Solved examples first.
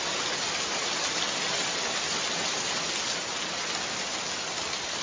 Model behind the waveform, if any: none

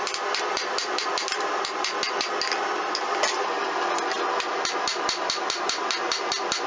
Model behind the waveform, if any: none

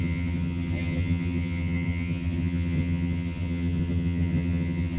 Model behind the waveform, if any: vocoder, HiFi-GAN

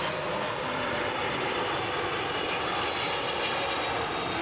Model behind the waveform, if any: none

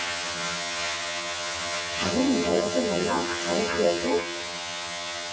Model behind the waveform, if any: vocoder, HiFi-GAN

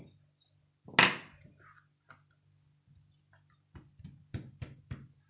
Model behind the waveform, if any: none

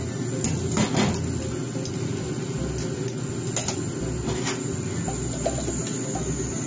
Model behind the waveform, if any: none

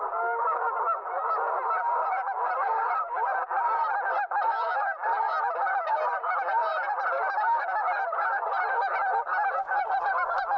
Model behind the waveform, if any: none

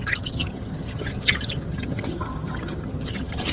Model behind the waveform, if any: vocoder, HiFi-GAN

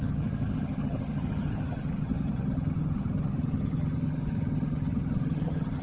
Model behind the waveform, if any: vocoder, HiFi-GAN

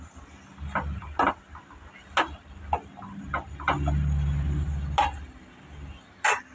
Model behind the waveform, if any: none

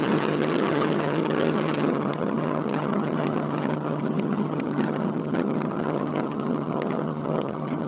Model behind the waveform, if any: vocoder, HiFi-GAN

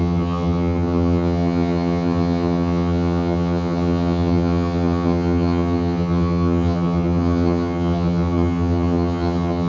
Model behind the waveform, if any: vocoder, HiFi-GAN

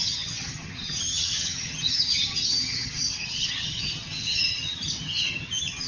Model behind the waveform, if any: vocoder, HiFi-GAN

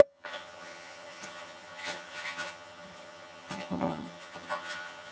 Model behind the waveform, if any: vocoder, HiFi-GAN